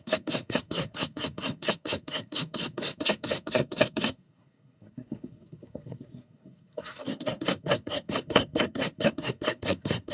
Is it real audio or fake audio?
fake